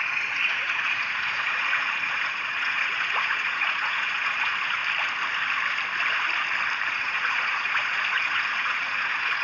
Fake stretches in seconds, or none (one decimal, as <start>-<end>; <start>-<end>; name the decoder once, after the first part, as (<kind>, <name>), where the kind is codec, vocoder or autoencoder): 0.0-4.8 (vocoder, Vocos); 6.9-9.4